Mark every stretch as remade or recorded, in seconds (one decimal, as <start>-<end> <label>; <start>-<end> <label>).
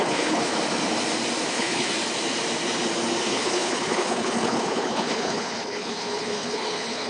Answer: 0.0-0.5 remade; 0.5-1.5 recorded; 1.5-1.9 remade; 1.9-3.2 recorded; 3.2-7.1 remade